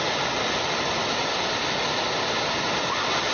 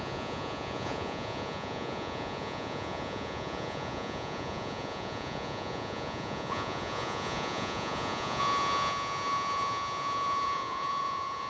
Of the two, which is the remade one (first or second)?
second